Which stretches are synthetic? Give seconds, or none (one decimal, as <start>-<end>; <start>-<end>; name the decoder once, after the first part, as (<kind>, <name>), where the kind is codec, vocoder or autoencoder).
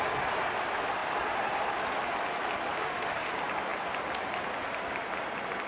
2.7-3.3 (autoencoder, DAC-VAE)